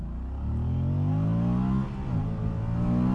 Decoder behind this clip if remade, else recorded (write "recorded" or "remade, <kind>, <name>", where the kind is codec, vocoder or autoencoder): recorded